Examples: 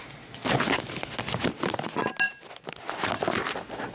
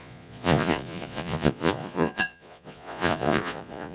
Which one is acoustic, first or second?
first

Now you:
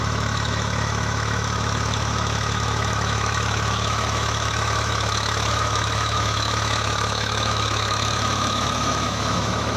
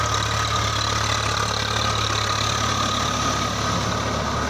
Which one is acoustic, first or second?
second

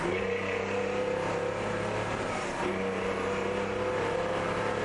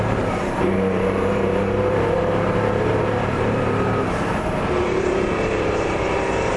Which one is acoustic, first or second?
first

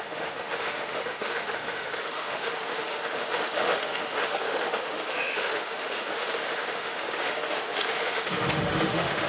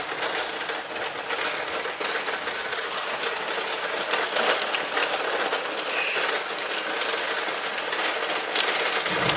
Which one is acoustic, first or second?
second